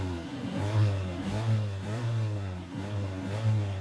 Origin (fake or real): fake